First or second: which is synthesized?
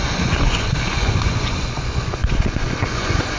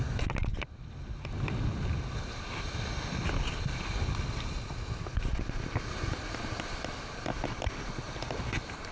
first